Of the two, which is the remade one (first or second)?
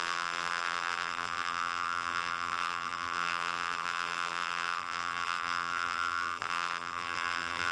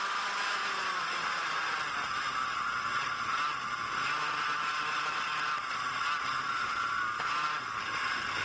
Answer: first